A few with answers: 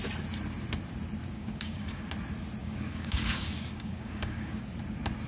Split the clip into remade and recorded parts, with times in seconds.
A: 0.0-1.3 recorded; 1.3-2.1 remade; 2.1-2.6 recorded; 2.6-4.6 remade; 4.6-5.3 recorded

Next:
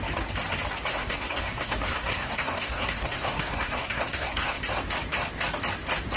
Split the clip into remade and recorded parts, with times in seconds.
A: 0.0-0.9 recorded; 0.9-4.6 remade; 4.6-6.2 recorded